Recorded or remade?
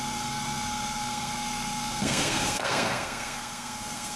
remade